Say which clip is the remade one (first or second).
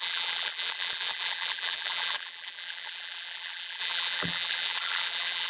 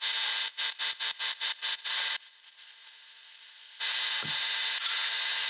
first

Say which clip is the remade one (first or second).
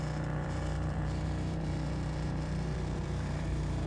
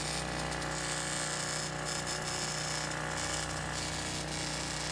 first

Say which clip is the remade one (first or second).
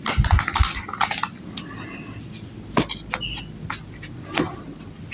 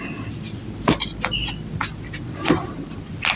second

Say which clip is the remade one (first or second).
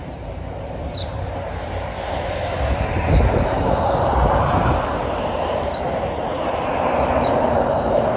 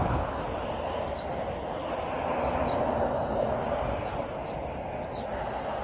first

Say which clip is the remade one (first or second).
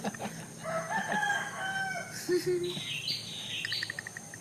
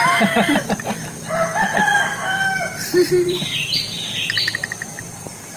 second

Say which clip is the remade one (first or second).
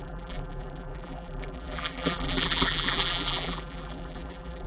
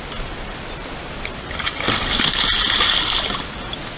first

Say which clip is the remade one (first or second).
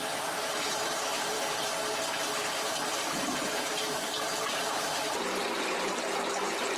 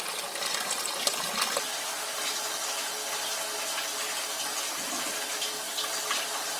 first